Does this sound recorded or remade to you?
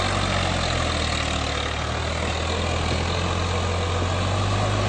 recorded